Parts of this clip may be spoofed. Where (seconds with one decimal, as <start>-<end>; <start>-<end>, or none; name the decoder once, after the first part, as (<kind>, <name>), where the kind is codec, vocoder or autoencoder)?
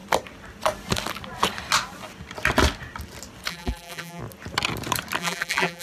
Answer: 3.5-4.2 (vocoder, BigVGAN v2); 5.2-5.8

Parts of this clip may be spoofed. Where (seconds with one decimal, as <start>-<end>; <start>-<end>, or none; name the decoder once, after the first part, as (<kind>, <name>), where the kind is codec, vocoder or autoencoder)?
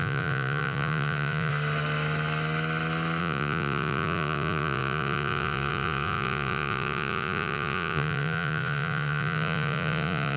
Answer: 0.0-1.5 (vocoder, Vocos); 3.2-10.4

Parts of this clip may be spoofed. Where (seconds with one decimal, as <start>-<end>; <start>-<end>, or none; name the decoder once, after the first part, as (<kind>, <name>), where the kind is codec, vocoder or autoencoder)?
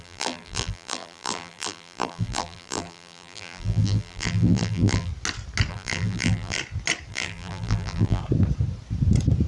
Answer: 0.0-5.1 (vocoder, BigVGAN v2); 5.7-6.6; 7.1-8.2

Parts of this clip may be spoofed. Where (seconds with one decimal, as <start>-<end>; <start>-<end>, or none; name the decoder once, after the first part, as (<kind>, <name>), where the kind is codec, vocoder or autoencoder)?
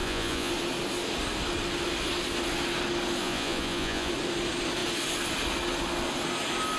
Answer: 0.0-0.5 (vocoder, Vocos); 3.2-4.1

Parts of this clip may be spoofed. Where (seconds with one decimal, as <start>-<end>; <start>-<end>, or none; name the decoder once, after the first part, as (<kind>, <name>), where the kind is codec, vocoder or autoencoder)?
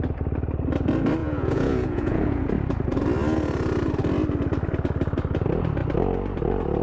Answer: 1.2-2.5 (vocoder, Vocos)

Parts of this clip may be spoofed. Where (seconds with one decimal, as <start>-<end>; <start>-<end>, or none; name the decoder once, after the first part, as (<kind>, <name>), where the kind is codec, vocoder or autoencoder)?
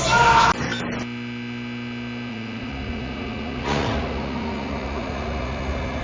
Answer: 2.3-6.0 (vocoder, Vocos)